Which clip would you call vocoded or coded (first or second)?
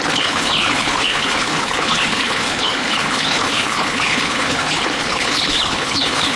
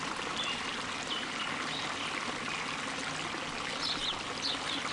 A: first